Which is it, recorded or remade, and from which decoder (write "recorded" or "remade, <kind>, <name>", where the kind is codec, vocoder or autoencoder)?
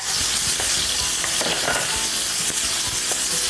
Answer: recorded